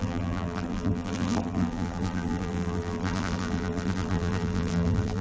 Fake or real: fake